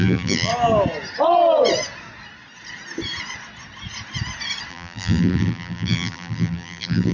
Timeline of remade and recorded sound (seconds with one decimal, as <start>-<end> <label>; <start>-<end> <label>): 0.0-0.5 remade; 0.5-4.7 recorded; 4.7-7.1 remade